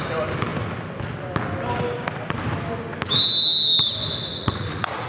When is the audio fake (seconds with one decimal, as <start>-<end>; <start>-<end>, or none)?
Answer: 4.3-5.1